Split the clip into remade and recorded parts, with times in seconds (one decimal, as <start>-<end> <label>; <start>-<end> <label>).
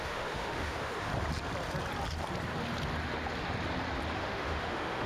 0.0-1.1 remade; 1.1-4.2 recorded; 4.2-5.1 remade